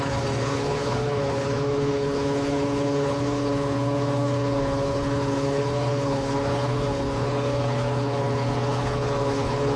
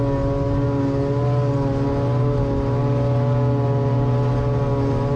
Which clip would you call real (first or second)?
second